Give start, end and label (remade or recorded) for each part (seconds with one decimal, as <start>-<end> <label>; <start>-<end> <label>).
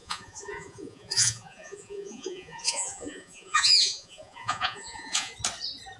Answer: 0.0-5.3 remade; 5.3-6.0 recorded